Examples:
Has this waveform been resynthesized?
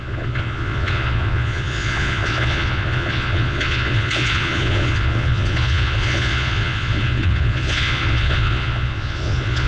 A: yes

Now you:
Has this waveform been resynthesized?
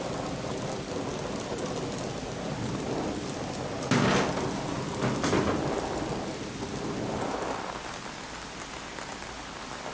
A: no